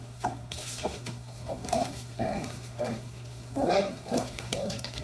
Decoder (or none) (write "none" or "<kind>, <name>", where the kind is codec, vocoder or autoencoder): codec, SNAC